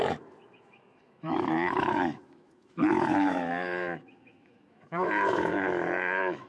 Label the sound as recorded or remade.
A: remade